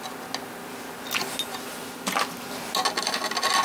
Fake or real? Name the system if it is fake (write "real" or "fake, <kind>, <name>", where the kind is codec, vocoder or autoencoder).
real